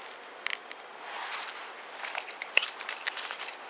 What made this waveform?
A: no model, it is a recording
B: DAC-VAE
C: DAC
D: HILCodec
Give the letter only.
A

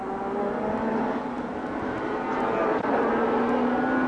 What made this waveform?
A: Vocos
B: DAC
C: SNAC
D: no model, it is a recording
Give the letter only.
D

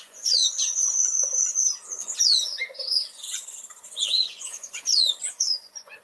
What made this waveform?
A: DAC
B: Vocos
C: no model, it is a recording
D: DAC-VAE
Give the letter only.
B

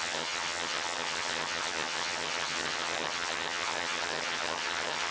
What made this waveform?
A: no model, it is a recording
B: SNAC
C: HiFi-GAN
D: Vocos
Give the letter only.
C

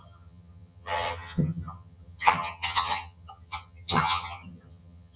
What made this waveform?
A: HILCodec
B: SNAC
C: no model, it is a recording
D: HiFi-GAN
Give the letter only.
D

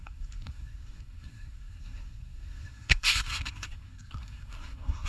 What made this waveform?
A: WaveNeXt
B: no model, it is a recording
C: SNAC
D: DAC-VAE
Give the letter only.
C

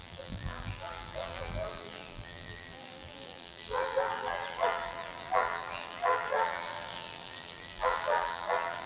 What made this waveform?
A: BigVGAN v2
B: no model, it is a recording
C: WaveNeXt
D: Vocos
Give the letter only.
A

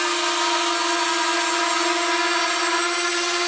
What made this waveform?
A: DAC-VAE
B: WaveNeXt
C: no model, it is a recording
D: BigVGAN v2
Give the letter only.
C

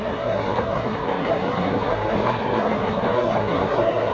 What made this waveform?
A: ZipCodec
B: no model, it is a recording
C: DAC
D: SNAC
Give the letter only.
D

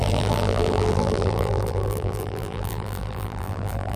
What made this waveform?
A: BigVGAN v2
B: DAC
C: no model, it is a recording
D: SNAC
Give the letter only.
A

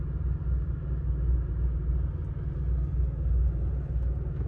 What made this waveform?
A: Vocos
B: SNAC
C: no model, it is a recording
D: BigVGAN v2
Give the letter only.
C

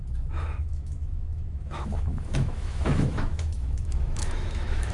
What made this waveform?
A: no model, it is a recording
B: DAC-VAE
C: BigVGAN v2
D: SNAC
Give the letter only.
B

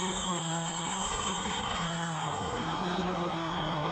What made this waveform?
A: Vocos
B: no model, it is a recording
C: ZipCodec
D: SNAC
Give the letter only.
D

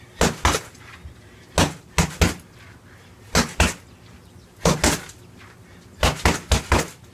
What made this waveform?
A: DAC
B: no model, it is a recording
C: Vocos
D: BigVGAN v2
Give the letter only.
B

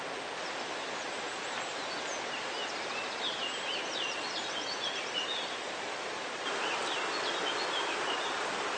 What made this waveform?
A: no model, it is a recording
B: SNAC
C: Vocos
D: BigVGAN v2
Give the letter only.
A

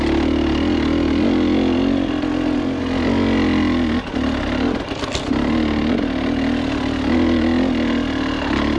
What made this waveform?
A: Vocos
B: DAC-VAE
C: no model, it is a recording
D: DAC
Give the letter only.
C